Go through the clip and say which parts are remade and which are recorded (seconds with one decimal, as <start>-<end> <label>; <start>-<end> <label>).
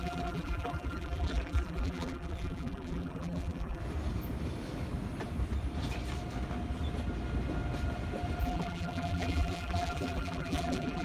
0.0-3.8 remade; 3.8-8.4 recorded; 8.4-11.0 remade